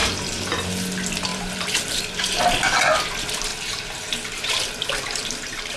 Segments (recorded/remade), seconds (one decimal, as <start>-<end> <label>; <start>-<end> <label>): 0.0-0.7 remade; 0.7-1.3 recorded; 1.3-2.4 remade; 2.4-3.5 recorded; 3.5-5.8 remade